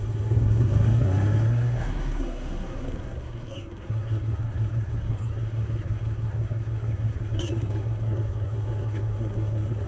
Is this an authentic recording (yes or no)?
no